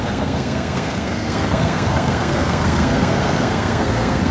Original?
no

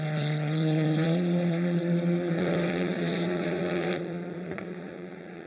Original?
no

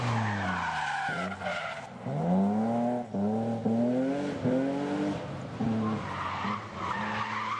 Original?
yes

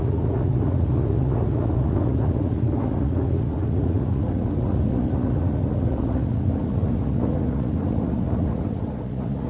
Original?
no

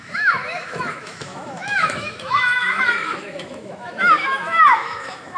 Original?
no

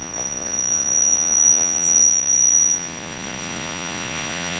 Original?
no